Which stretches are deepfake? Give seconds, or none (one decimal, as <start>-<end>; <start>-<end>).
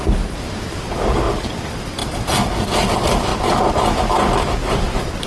none